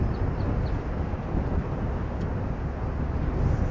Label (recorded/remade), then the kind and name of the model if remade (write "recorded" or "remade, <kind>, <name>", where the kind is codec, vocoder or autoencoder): recorded